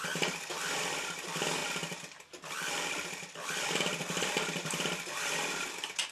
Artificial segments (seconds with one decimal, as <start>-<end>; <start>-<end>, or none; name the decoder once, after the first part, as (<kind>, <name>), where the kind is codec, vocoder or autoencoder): 0.0-6.1 (vocoder, BigVGAN v2)